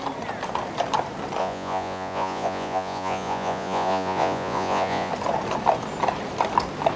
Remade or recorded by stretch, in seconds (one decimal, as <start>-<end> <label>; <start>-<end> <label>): 0.0-1.4 recorded; 1.4-5.1 remade; 5.1-7.0 recorded